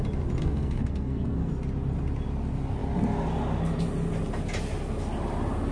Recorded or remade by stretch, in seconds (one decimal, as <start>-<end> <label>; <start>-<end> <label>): 0.0-0.4 recorded; 0.4-1.5 remade; 1.5-5.7 recorded